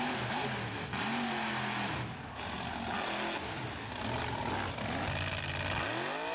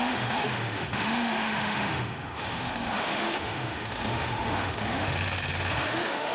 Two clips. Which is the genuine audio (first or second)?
first